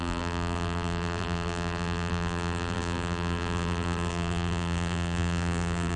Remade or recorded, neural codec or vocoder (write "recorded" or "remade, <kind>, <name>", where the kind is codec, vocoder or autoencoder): remade, vocoder, BigVGAN v2